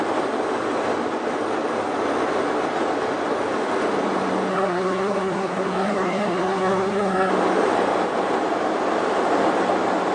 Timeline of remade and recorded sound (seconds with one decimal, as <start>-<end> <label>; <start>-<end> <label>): 0.0-4.5 recorded; 4.5-7.3 remade; 7.3-10.1 recorded